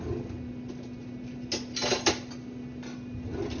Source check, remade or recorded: recorded